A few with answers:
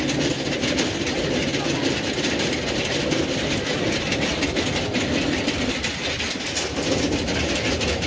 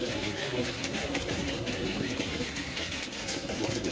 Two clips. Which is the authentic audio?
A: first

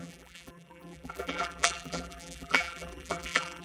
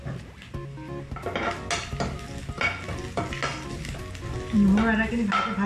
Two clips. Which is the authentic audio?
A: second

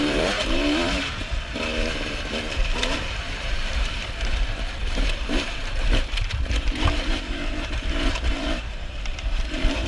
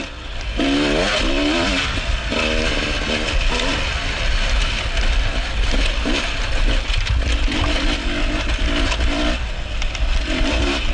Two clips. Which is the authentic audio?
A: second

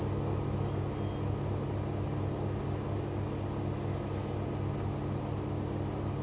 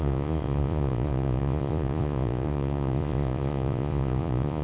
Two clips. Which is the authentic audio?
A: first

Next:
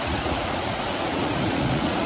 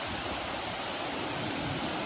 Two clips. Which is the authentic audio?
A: second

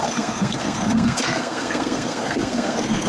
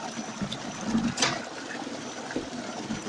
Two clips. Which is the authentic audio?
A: second